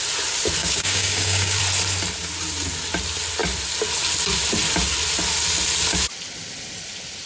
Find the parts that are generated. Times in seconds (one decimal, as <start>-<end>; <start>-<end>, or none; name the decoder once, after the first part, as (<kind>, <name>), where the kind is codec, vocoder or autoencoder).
0.6-1.6 (codec, DAC)